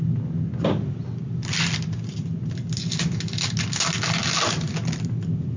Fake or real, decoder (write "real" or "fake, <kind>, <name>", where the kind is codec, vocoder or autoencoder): real